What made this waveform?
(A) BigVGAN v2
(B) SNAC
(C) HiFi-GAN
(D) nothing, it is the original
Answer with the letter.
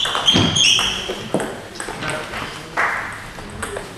D